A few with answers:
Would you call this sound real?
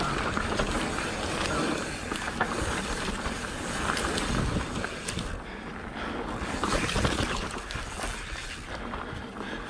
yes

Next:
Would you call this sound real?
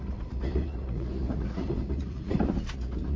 no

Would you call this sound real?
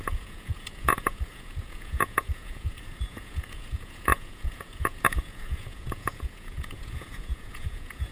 no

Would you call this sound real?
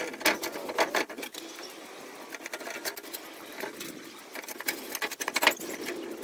yes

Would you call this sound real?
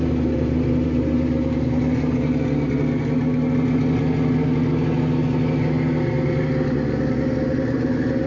yes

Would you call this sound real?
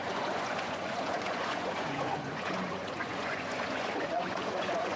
no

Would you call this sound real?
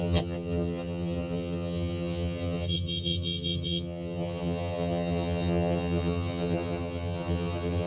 no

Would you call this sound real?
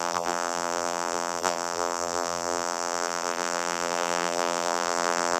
no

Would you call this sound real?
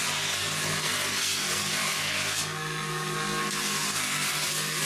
no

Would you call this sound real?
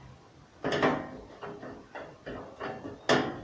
yes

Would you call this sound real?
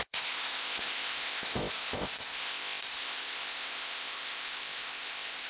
no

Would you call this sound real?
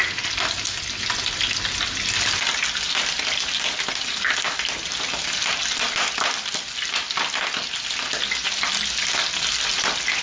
yes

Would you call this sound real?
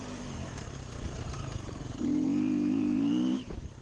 no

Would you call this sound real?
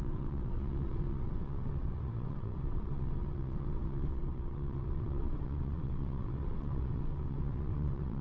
no